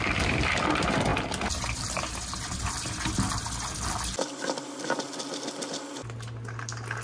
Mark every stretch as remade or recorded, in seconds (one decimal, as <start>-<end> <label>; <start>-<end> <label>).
0.0-7.0 recorded